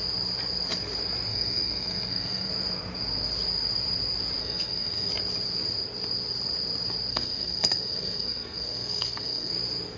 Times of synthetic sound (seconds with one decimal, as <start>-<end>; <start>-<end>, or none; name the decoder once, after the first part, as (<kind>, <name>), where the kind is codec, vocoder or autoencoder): 1.3-2.5 (codec, SNAC); 4.4-5.1; 7.1-9.5